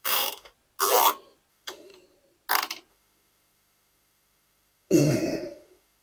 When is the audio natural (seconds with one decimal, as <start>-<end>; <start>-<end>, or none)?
0.5-1.5; 1.9-2.9